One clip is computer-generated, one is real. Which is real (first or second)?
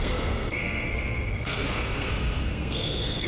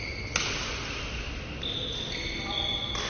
second